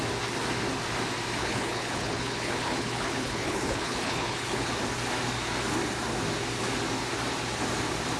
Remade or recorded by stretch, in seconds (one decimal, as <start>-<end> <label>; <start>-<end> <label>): 0.0-1.4 recorded; 1.4-4.7 remade; 4.7-8.2 recorded